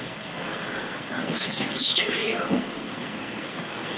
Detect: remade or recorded remade